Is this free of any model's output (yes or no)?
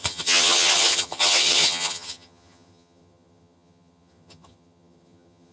no